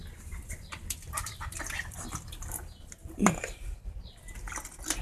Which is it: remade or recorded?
remade